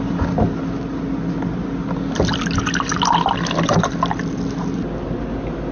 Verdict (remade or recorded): recorded